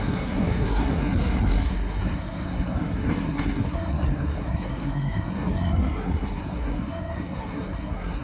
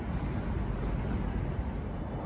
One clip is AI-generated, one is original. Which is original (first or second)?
second